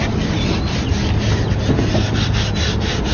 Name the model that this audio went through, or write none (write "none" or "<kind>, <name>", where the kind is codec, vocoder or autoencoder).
none